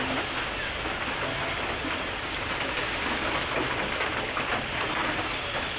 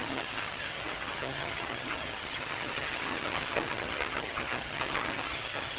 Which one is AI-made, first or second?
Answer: second